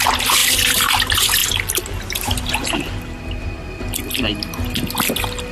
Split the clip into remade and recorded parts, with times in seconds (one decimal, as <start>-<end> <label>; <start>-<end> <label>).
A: 0.0-5.5 recorded